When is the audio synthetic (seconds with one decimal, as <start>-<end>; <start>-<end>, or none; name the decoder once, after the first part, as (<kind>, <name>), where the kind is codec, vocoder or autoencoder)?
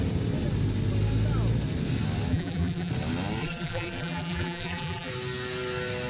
2.3-2.9 (vocoder, BigVGAN v2); 3.4-5.1